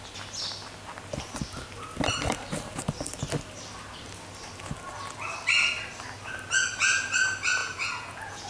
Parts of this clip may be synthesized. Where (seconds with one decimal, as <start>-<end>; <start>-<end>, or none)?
7.6-8.5